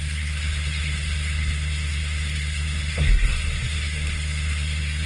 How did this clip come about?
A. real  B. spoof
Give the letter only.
B